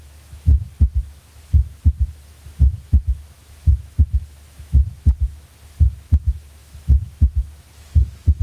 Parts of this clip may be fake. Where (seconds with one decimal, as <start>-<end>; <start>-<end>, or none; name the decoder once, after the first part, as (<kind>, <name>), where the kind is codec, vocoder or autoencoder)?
0.0-0.5 (autoencoder, DAC-VAE); 1.1-8.4

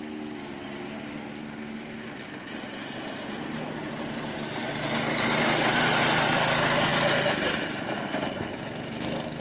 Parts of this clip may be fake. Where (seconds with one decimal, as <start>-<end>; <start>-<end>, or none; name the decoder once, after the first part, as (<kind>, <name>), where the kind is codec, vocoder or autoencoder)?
none

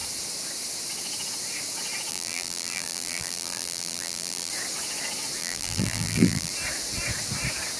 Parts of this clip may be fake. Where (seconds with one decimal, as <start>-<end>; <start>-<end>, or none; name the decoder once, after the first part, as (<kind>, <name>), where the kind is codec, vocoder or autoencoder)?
2.1-4.5 (vocoder, BigVGAN v2); 5.4-6.5

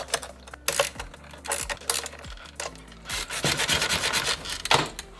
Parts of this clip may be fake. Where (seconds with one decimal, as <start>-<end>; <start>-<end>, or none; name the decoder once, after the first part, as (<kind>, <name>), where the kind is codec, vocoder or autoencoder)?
none

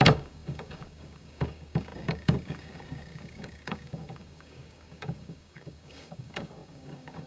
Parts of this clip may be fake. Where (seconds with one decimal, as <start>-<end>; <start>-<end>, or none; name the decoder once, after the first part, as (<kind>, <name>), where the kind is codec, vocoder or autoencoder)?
0.0-7.3 (codec, DAC)

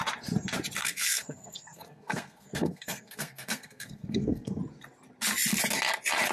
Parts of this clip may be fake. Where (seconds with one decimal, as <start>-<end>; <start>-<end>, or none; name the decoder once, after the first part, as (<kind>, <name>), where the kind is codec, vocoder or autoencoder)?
0.8-4.6 (codec, SNAC)

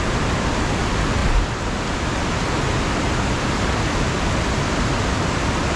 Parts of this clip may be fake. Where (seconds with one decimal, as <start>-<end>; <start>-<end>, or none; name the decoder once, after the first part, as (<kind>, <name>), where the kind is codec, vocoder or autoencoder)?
none